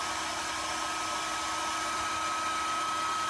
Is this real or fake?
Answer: real